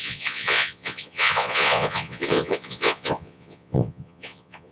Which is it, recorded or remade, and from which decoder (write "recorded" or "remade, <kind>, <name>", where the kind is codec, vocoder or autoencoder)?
remade, vocoder, Vocos